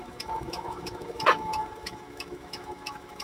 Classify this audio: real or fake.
fake